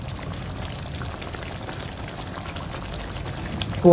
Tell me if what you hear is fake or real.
real